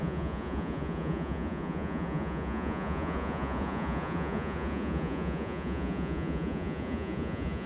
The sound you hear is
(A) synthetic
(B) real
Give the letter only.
A